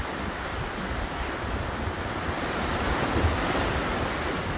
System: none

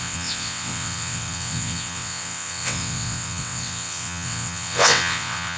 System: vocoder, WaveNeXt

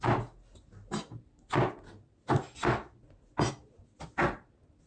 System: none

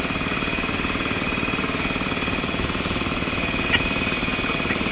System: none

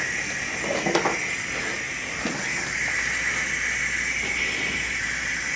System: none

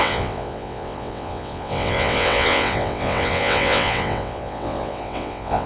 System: vocoder, WaveNeXt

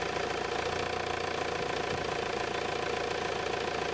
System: none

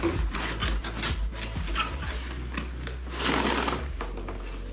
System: none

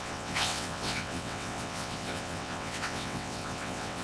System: vocoder, WaveNeXt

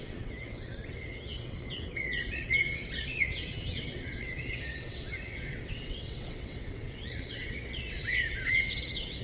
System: vocoder, WaveNeXt